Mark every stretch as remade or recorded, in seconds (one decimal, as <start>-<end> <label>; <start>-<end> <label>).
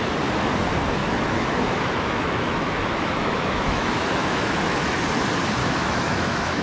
0.0-1.0 recorded; 1.0-5.0 remade; 5.0-5.6 recorded; 5.6-6.6 remade